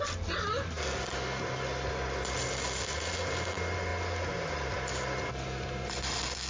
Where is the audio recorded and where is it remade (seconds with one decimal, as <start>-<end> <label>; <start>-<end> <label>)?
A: 0.0-6.5 recorded